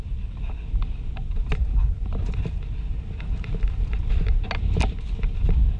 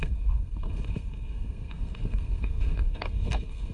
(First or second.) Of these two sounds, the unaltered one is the first